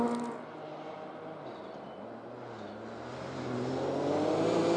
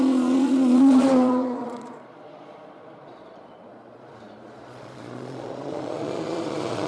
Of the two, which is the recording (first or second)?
first